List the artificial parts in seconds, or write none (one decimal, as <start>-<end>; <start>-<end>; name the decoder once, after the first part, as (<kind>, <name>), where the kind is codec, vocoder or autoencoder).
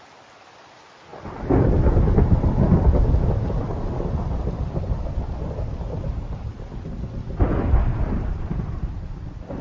none